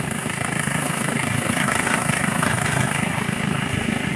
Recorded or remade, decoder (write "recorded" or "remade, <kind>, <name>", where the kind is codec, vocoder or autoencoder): remade, codec, SNAC